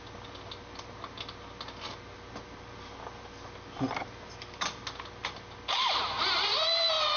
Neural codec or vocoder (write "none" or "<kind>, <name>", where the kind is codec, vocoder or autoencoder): none